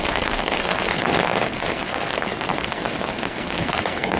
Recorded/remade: remade